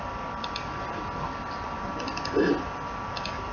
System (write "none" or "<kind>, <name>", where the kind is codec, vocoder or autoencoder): none